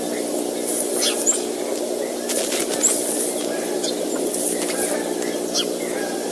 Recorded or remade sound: recorded